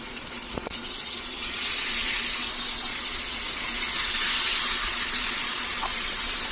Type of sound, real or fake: fake